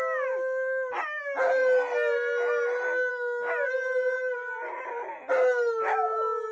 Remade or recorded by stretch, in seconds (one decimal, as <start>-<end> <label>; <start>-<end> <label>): 0.0-6.5 recorded

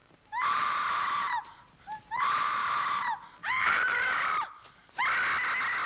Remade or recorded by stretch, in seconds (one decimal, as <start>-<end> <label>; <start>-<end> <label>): 0.0-3.0 remade; 3.0-3.4 recorded; 3.4-5.0 remade; 5.0-5.9 recorded

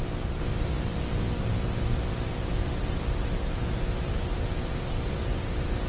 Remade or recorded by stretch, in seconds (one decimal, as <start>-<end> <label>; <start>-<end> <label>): 0.0-5.9 recorded

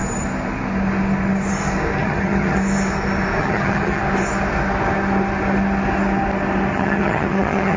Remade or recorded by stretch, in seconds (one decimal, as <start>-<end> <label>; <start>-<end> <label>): 0.0-2.0 recorded; 2.0-2.6 remade; 2.6-3.4 recorded; 3.4-4.0 remade; 4.0-6.7 recorded; 6.7-7.8 remade

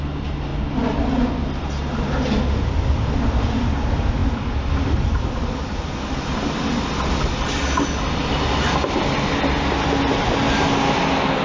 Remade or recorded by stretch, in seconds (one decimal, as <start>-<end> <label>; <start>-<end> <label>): 0.0-11.4 recorded

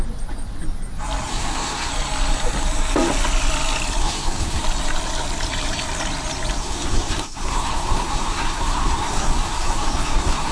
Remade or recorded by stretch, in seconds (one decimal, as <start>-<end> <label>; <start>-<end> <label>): 0.0-1.3 recorded; 1.3-1.9 remade; 1.9-4.0 recorded; 4.0-4.6 remade; 4.6-6.6 recorded; 6.6-10.5 remade